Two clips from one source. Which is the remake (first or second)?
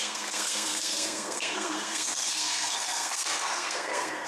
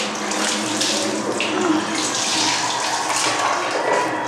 first